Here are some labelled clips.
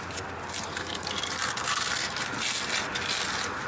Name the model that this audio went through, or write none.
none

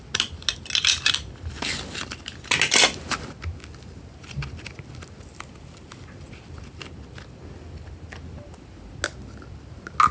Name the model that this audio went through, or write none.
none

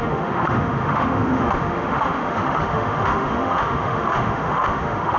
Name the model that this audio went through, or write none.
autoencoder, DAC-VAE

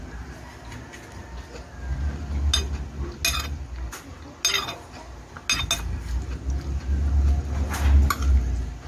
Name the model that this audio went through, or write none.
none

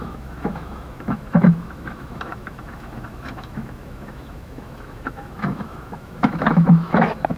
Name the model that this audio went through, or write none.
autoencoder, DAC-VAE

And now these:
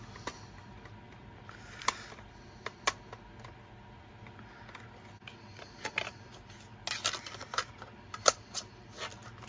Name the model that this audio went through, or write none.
none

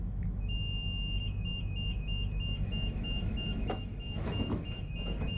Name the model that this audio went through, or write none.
autoencoder, DAC-VAE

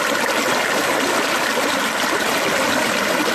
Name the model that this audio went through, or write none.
none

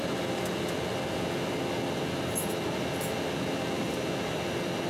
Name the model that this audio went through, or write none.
none